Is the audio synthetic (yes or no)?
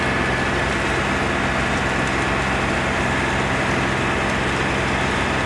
no